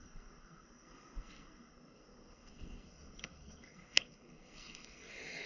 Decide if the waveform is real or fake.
fake